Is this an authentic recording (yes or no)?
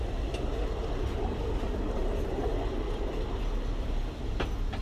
yes